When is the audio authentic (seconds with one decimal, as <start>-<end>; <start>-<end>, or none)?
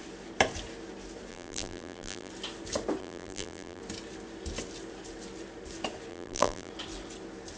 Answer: 0.0-1.3; 2.3-3.0; 3.8-6.1; 6.7-7.6